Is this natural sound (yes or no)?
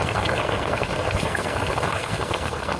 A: no